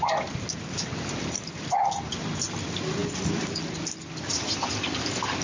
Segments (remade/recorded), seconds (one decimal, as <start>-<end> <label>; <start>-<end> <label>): 0.0-5.4 recorded